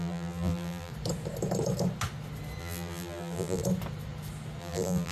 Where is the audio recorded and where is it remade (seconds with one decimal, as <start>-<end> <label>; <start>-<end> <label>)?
0.0-0.9 remade; 0.9-2.6 recorded; 2.6-3.6 remade; 3.6-4.6 recorded; 4.6-5.1 remade

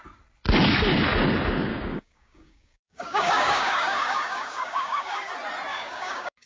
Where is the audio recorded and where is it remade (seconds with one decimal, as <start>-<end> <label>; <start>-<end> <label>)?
0.0-1.7 recorded; 1.7-5.3 remade; 5.3-5.7 recorded; 5.7-6.5 remade